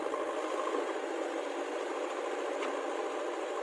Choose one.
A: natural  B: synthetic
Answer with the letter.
A